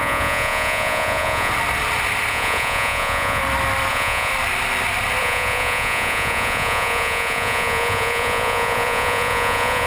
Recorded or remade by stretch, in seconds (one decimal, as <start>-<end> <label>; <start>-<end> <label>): 0.0-1.5 remade; 1.5-2.3 recorded; 2.3-3.4 remade; 3.4-3.9 recorded; 3.9-4.3 remade; 4.3-5.2 recorded; 5.2-9.9 remade